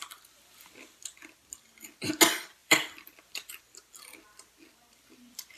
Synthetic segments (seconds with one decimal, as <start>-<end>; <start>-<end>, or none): 2.6-3.6